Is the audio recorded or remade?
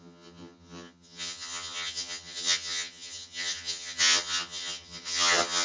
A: remade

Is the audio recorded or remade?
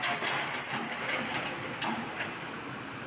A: recorded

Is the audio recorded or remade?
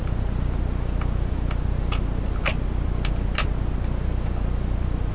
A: recorded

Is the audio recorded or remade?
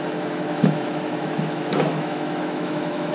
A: remade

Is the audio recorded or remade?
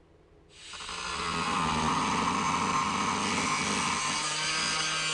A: recorded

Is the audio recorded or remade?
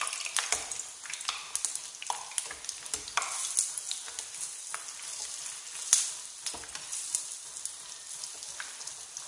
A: recorded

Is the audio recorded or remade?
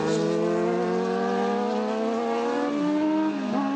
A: recorded